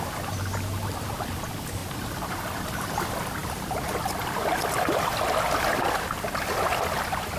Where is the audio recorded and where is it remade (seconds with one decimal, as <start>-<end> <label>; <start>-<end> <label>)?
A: 0.0-1.8 recorded; 1.8-2.4 remade; 2.4-7.4 recorded